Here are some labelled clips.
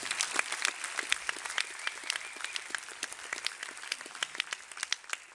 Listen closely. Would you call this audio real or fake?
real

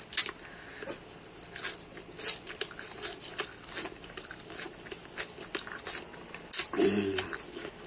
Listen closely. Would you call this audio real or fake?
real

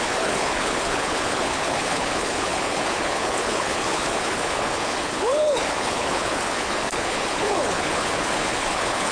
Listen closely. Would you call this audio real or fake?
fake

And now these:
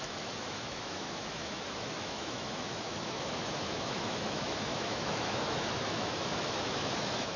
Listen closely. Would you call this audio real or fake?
fake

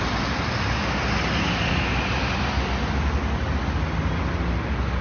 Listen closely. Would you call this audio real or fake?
real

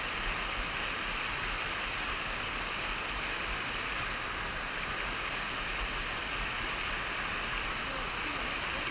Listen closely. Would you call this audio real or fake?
real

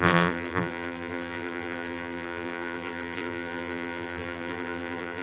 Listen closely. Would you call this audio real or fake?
fake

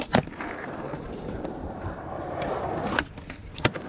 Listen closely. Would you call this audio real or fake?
fake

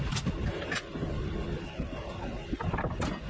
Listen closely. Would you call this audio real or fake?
real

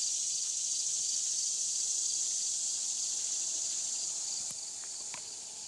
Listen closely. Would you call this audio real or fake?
real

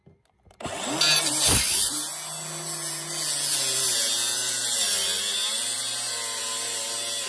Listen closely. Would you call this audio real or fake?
real